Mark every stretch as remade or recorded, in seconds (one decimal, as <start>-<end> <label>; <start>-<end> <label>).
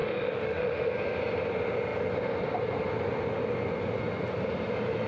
0.0-0.9 remade; 0.9-5.1 recorded